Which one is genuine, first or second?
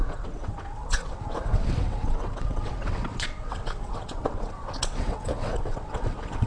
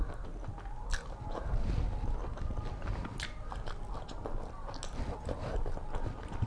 second